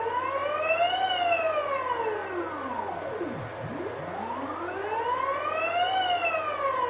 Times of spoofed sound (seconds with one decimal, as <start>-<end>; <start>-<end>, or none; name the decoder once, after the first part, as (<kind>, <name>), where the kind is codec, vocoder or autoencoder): none